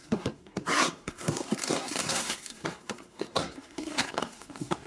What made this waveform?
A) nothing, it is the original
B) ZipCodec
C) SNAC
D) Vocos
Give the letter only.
C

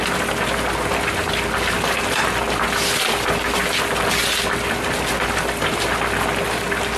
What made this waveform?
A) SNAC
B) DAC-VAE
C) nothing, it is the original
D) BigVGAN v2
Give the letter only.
C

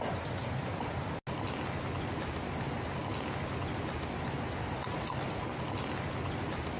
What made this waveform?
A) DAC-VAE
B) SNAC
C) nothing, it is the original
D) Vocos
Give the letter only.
C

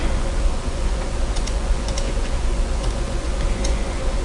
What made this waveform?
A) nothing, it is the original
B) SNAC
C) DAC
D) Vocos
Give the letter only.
D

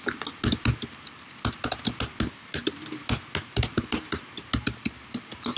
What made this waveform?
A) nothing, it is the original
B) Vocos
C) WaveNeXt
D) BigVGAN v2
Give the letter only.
A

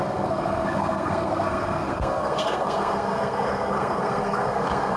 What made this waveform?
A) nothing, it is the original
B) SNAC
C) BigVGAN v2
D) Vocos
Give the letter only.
B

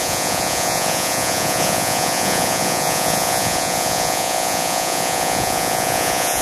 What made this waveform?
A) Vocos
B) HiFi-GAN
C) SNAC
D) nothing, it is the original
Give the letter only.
A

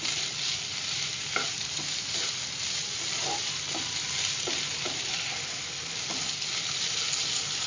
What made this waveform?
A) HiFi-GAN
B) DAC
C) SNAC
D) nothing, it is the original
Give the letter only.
D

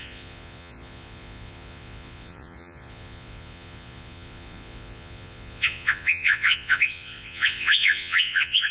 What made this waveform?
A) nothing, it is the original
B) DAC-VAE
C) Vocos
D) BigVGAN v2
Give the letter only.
C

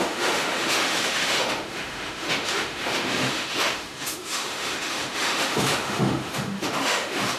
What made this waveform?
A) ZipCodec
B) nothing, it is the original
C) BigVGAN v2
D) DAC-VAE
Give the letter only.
D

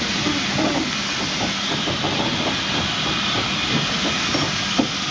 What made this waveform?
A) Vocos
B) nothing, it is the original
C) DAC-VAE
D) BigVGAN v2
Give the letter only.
B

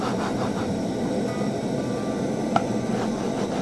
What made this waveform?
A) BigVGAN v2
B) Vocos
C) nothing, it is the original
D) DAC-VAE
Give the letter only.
C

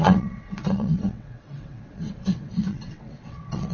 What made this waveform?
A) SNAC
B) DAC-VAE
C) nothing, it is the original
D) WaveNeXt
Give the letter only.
D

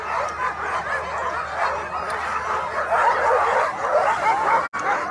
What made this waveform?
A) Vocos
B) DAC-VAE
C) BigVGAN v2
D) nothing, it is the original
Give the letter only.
D